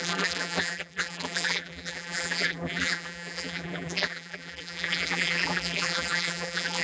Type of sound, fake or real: fake